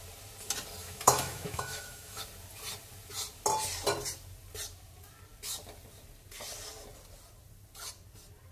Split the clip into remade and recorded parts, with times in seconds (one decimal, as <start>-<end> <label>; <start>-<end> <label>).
0.0-0.8 recorded; 0.8-2.2 remade; 2.2-8.5 recorded